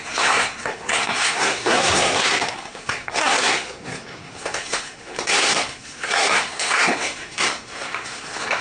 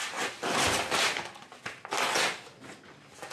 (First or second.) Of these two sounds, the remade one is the first